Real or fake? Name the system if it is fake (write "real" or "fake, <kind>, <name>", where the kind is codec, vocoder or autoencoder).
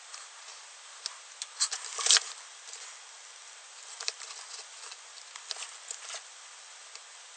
real